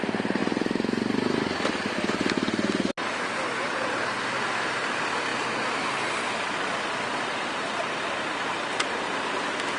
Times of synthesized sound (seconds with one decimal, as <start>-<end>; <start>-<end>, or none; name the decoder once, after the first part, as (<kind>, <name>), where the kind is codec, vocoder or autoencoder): none